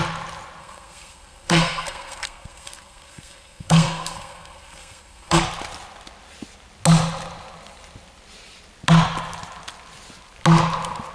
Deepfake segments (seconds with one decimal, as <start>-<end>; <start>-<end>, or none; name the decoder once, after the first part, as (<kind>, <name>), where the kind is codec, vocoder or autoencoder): 0.6-5.4 (codec, SNAC)